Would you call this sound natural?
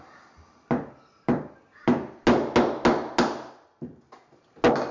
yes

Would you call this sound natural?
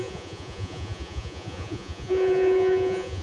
no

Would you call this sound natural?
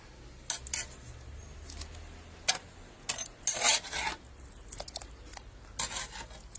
yes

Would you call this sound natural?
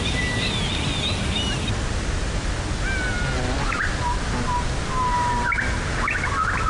yes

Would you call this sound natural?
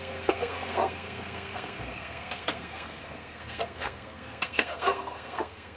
no